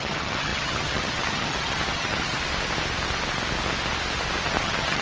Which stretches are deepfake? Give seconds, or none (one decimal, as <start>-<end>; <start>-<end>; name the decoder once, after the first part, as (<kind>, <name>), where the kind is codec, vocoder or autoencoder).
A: 0.0-2.4 (vocoder, HiFi-GAN); 4.6-5.0